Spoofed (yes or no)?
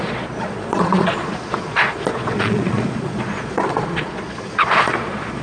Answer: yes